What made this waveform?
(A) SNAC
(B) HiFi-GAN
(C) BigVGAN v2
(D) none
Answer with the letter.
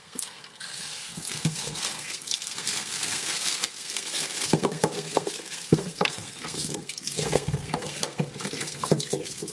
A